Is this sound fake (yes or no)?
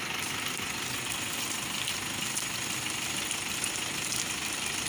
no